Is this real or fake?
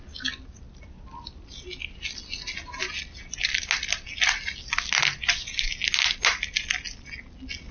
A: real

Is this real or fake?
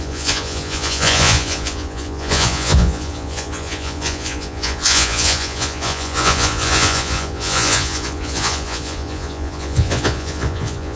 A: fake